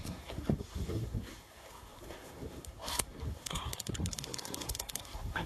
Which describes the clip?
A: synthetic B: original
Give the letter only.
A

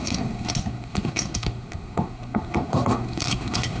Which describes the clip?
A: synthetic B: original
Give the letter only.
A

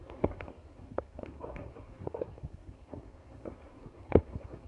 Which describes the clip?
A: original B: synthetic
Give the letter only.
B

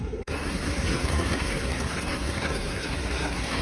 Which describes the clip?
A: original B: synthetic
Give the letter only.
B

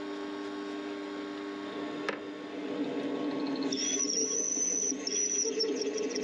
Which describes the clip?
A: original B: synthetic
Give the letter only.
A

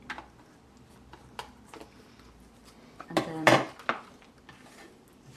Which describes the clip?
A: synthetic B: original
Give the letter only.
B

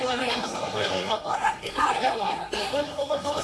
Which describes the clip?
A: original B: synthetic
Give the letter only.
B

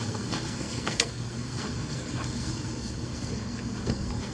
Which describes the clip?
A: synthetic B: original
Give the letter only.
A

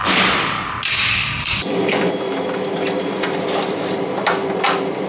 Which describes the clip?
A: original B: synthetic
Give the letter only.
A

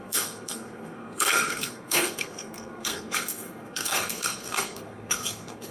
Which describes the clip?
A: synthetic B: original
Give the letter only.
A